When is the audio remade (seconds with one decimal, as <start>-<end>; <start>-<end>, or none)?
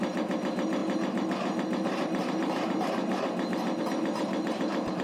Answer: none